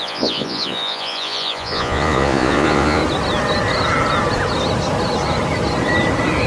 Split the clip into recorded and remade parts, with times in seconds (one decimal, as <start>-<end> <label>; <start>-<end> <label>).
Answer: 0.0-3.0 remade; 3.0-6.5 recorded